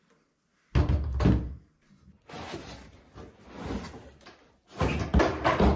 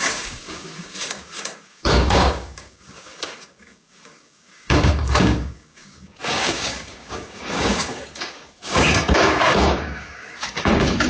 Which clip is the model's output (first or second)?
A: second